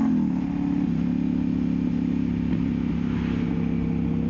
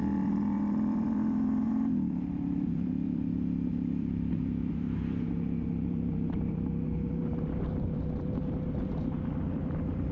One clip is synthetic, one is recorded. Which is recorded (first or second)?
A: first